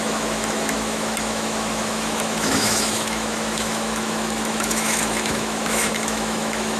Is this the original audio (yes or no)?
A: no